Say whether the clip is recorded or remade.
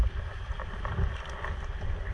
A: recorded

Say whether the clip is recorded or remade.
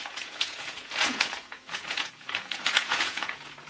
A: remade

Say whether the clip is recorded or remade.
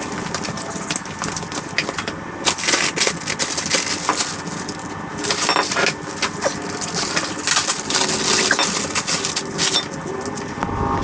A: recorded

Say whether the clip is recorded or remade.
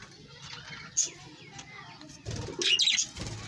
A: recorded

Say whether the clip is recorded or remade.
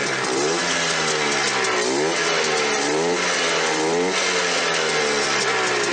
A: recorded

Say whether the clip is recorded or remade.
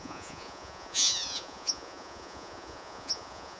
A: remade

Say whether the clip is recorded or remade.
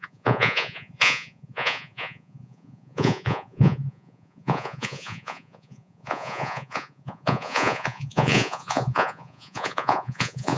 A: remade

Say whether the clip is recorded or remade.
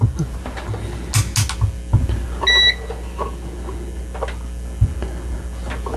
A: recorded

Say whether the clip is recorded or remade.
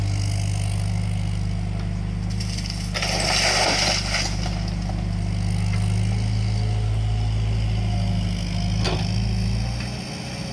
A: recorded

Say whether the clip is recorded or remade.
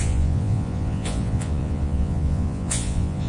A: remade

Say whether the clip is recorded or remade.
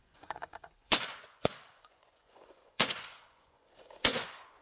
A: remade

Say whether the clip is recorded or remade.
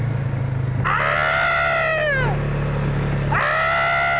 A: recorded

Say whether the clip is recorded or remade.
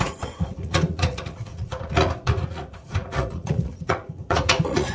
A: remade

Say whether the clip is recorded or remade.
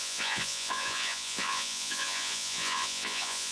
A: remade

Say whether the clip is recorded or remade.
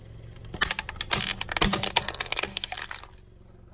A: recorded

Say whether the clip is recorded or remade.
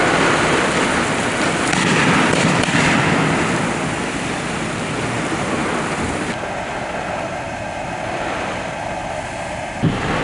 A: recorded